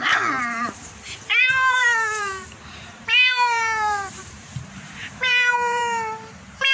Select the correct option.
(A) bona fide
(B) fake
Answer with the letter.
B